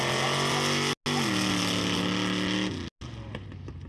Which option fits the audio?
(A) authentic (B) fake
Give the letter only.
A